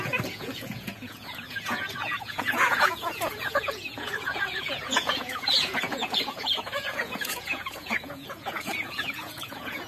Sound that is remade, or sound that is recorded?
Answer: remade